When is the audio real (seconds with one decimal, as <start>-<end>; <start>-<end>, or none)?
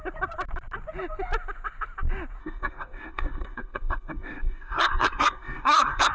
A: 0.0-2.4